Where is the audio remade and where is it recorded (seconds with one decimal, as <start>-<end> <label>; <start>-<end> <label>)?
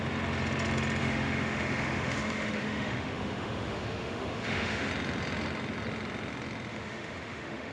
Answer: 0.0-1.0 recorded; 1.0-4.9 remade; 4.9-6.7 recorded; 6.7-7.7 remade